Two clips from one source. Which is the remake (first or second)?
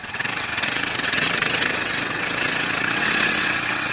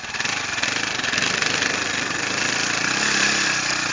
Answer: first